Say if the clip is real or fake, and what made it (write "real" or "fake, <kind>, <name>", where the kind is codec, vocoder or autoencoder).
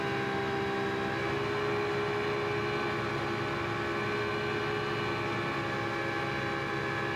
real